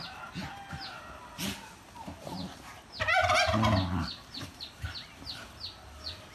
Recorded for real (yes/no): yes